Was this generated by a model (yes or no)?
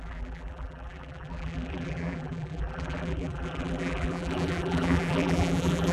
yes